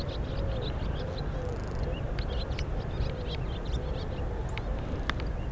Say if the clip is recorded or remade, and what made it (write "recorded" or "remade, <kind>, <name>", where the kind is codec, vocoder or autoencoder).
recorded